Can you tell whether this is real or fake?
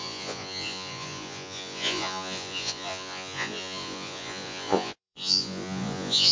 fake